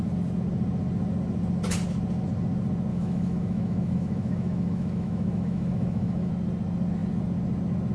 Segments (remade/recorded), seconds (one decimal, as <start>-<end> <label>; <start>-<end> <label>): 0.0-2.9 recorded; 2.9-6.3 remade; 6.3-7.9 recorded